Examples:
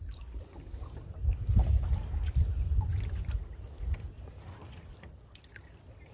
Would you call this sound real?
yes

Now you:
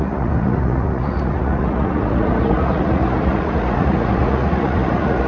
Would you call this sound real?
no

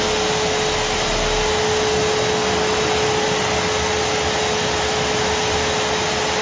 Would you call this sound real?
yes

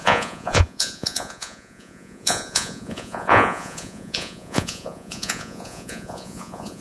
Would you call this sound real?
no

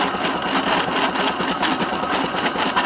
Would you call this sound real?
yes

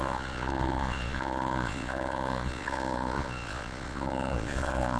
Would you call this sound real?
no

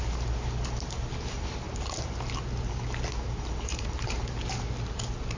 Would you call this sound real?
yes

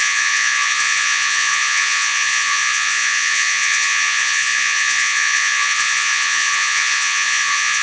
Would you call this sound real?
no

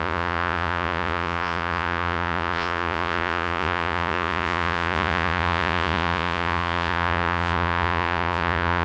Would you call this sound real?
no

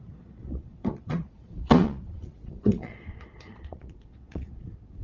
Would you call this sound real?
no